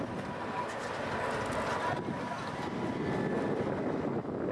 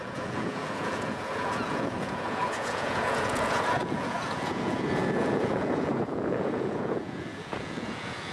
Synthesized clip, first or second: second